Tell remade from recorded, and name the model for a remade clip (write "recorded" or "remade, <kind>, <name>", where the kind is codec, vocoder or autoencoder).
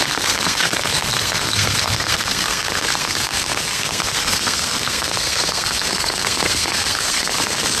remade, codec, SNAC